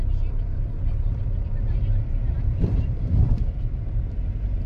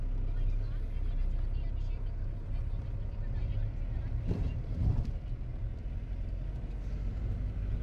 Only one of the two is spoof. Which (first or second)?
first